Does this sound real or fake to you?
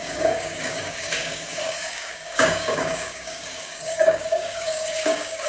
fake